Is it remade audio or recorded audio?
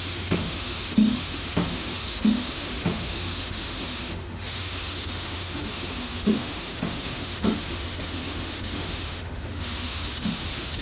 remade